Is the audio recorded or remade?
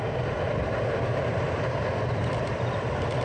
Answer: recorded